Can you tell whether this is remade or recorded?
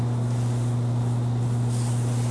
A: recorded